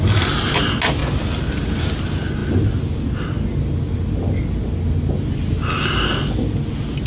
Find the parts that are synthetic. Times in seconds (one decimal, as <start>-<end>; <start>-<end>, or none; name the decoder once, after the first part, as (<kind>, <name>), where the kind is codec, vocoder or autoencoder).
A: none